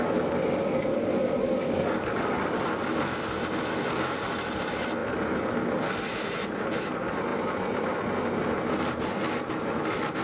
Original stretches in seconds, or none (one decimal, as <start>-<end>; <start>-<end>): 0.0-0.9; 3.0-10.2